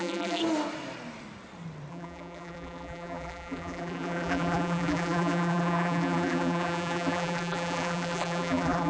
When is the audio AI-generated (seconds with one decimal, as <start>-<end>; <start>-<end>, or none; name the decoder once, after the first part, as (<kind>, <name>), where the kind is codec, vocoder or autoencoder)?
0.0-0.4 (vocoder, BigVGAN v2); 1.9-8.9